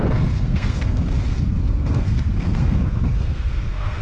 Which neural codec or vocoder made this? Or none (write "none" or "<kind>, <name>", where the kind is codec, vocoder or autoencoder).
codec, SNAC